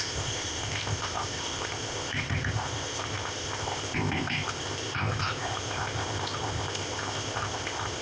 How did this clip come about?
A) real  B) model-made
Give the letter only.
B